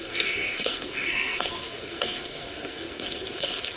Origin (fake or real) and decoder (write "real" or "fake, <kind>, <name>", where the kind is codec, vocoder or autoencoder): fake, codec, SNAC